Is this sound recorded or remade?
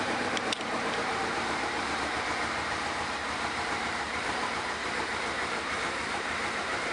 remade